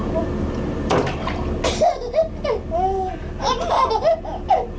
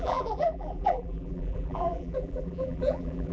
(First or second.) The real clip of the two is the first